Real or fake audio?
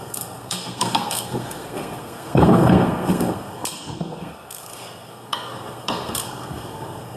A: fake